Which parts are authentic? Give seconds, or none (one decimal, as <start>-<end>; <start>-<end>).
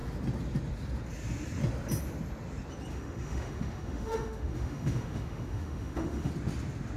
0.0-2.9; 6.3-7.0